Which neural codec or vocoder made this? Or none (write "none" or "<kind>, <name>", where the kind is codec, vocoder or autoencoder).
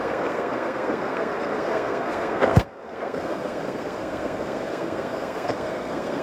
codec, SNAC